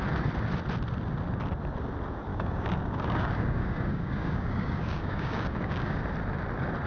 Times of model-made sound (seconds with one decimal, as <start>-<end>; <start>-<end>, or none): 2.3-6.0